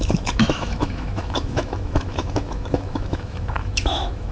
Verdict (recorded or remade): remade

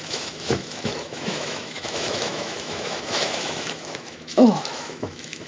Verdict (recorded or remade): remade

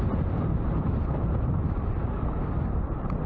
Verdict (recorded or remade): recorded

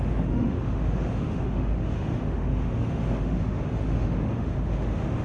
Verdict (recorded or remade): remade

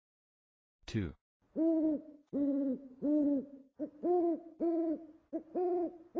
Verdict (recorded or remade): recorded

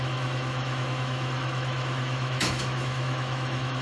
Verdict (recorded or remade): remade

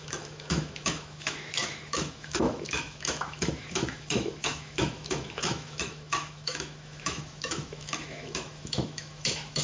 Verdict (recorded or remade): remade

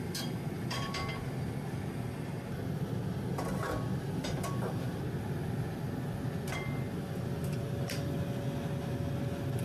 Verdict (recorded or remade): recorded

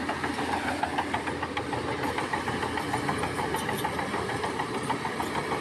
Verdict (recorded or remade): recorded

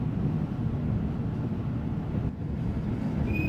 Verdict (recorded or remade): recorded